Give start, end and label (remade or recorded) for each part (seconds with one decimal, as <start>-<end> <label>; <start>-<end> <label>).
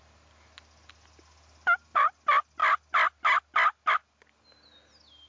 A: 0.0-5.3 recorded